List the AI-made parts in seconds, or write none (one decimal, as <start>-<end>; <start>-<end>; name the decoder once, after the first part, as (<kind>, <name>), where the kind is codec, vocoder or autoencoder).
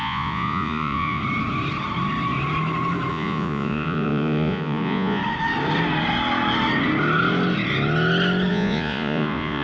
0.0-1.2 (vocoder, Vocos); 3.1-5.2; 8.5-9.6